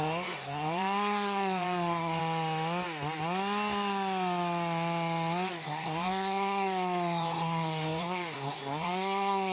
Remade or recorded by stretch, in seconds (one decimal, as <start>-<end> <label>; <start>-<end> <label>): 0.0-2.2 remade; 2.2-5.5 recorded; 5.5-9.5 remade